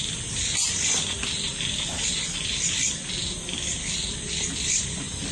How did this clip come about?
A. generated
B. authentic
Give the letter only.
B